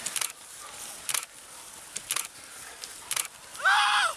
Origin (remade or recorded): recorded